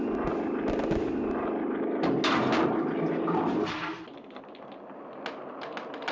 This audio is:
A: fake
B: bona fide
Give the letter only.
B